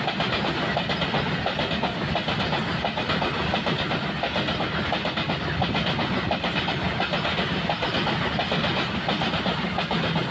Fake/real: real